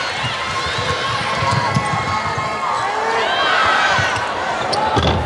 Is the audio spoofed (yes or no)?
no